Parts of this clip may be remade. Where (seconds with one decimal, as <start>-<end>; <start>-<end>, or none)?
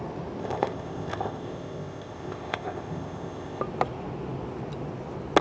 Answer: 0.4-3.6